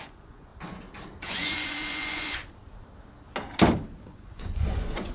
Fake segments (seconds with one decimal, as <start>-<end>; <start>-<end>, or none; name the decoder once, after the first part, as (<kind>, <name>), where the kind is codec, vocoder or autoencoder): 0.0-0.5 (vocoder, Vocos); 1.2-2.4; 4.1-5.1